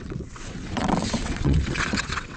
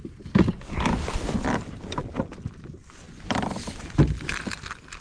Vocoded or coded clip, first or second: first